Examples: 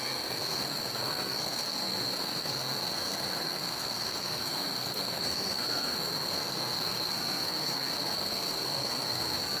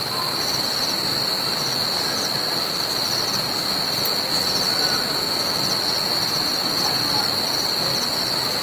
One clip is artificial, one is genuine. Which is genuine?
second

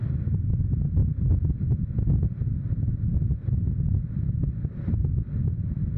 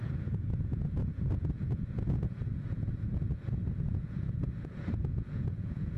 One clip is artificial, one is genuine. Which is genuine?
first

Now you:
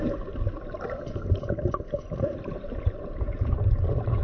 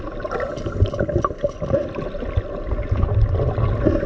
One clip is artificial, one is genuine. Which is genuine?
second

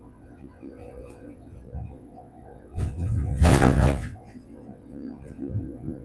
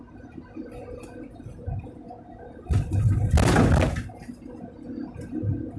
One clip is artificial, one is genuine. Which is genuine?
second